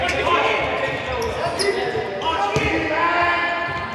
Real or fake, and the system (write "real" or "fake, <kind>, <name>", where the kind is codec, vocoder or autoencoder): real